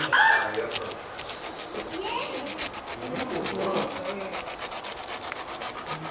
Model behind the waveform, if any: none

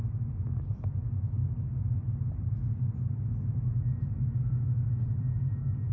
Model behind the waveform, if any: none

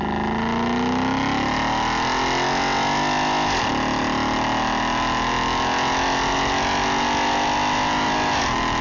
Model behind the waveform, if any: none